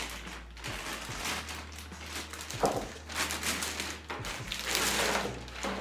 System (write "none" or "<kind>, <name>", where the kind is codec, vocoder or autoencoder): none